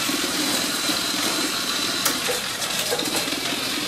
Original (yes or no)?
no